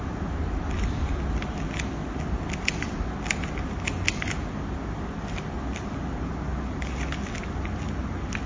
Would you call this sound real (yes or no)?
yes